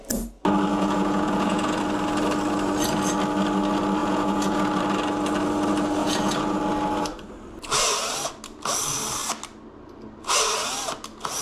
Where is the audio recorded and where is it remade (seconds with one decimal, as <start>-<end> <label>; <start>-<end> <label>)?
0.0-0.7 recorded; 0.7-1.8 remade; 1.8-4.0 recorded; 4.0-4.7 remade; 4.7-6.0 recorded; 6.0-6.6 remade; 6.6-11.4 recorded